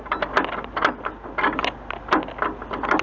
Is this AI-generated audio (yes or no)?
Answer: no